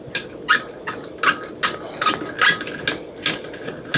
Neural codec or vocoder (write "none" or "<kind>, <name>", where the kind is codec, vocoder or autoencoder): none